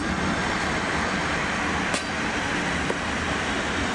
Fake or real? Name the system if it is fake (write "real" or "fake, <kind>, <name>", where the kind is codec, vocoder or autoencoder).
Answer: real